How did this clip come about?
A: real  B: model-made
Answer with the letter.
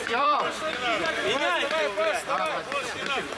B